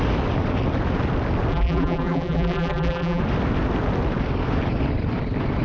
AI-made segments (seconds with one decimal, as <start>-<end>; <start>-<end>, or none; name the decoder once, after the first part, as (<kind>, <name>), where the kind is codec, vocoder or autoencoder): 1.5-3.2 (vocoder, BigVGAN v2)